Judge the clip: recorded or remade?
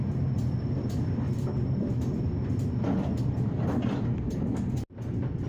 recorded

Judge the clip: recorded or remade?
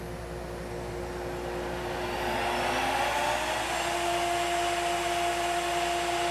recorded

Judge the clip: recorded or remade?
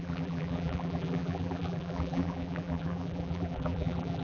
remade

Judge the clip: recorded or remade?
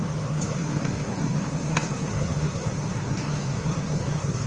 remade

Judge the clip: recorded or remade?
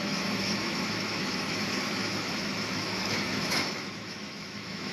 remade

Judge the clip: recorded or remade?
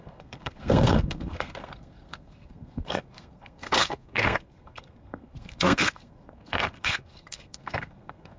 remade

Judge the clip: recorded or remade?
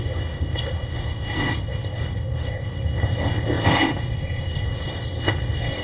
remade